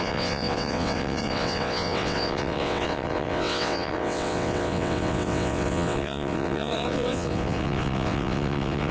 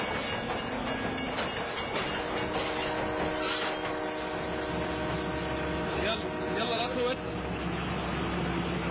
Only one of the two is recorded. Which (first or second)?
second